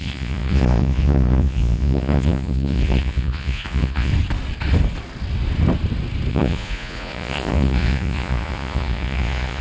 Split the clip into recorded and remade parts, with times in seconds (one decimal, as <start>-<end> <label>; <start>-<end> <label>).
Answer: 0.0-4.1 remade; 4.1-6.3 recorded; 6.3-9.6 remade